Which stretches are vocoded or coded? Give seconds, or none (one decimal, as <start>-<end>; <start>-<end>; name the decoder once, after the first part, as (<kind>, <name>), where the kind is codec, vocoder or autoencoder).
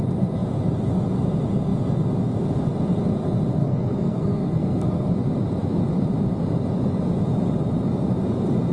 3.6-5.1 (codec, SNAC)